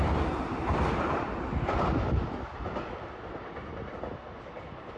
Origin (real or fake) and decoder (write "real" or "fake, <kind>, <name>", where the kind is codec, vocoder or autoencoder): real